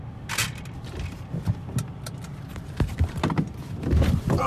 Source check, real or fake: real